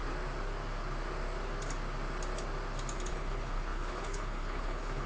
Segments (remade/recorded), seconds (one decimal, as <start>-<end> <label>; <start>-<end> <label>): 0.0-3.1 recorded; 3.1-5.1 remade